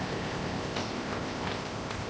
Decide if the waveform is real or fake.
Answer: fake